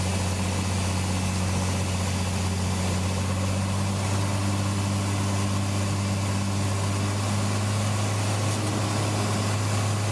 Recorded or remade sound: recorded